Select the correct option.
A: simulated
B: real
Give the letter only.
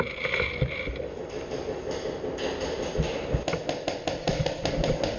B